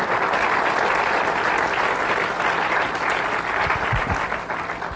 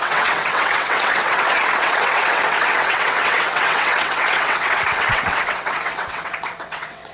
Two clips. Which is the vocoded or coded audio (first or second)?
second